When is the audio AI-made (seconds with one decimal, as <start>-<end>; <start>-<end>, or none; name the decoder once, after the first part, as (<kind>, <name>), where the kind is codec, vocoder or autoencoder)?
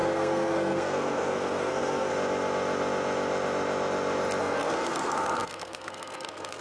0.0-2.1 (codec, SNAC); 4.4-6.6